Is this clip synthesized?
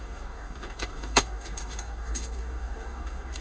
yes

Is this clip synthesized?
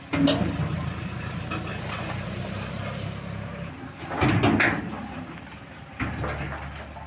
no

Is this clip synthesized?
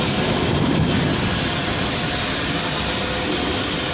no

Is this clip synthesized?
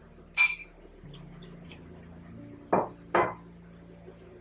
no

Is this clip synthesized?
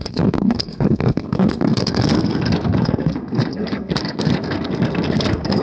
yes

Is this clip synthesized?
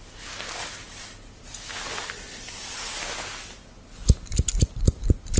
no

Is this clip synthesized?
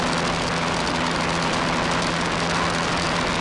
no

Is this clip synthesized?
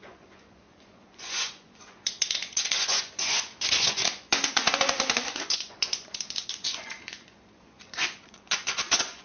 yes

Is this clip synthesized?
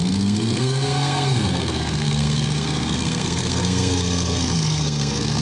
yes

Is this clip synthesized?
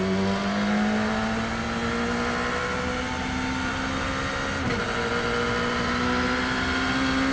no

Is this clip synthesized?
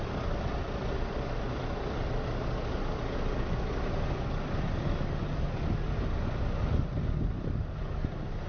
no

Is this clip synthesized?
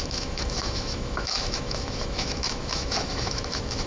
yes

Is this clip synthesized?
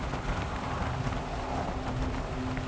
no